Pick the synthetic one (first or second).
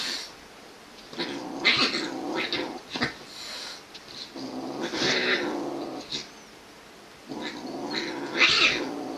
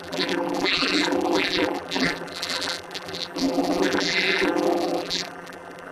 second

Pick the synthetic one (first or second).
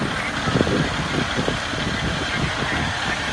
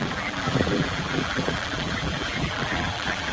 second